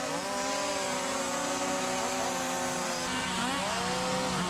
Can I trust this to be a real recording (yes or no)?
yes